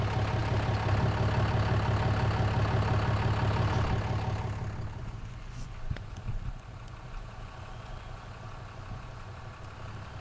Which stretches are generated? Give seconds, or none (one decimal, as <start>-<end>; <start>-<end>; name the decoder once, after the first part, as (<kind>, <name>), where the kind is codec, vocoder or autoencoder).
5.0-9.4 (vocoder, Vocos)

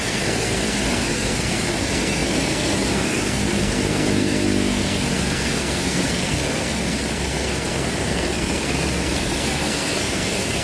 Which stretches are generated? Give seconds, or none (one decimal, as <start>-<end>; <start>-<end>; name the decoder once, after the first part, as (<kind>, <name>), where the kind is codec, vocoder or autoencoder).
0.0-10.6 (codec, SNAC)

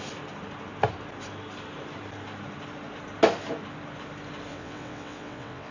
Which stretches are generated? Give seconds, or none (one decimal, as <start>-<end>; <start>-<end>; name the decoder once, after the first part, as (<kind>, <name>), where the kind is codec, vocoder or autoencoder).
4.5-5.7 (vocoder, WaveNeXt)

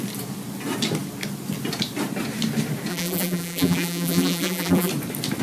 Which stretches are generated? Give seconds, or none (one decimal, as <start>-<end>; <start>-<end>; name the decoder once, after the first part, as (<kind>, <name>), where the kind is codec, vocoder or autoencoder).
2.9-4.9 (vocoder, BigVGAN v2)